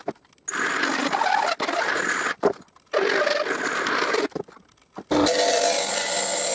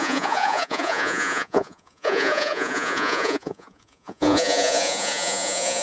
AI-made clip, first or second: second